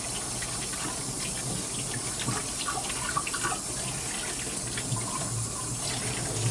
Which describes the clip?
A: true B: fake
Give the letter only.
A